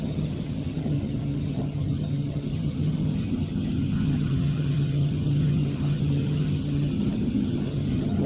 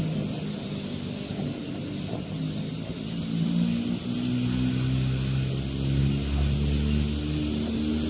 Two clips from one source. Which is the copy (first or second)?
first